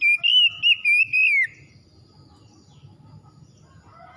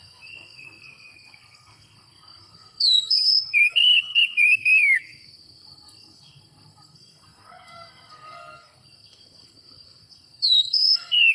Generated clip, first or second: second